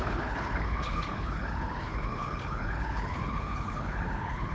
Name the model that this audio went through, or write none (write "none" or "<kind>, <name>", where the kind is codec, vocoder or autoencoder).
codec, HILCodec